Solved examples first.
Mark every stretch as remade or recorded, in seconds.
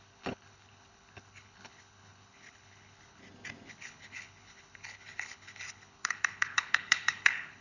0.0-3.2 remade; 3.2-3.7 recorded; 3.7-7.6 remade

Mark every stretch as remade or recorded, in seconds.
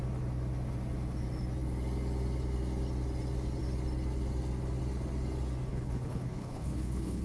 0.0-5.7 recorded; 5.7-7.2 remade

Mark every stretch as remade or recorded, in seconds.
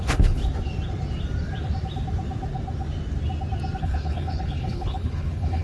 0.0-0.4 remade; 0.4-3.8 recorded; 3.8-5.6 remade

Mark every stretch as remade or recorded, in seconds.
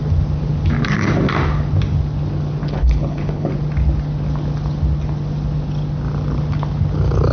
0.0-2.6 recorded; 2.6-3.5 remade; 3.5-7.3 recorded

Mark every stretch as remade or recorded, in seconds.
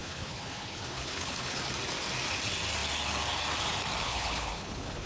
0.0-1.6 remade; 1.6-4.0 recorded; 4.0-5.1 remade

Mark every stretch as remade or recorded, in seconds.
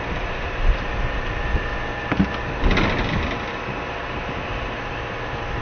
0.0-5.6 recorded